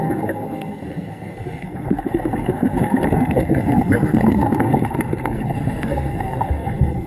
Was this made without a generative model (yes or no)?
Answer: no